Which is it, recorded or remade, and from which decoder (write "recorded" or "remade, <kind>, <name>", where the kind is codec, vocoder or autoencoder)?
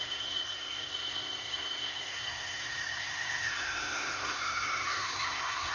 remade, codec, SNAC